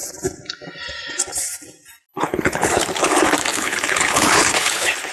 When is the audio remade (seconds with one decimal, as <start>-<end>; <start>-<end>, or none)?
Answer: 2.1-3.1; 3.5-5.1